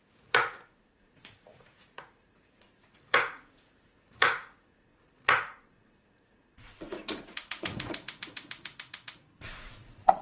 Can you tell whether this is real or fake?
fake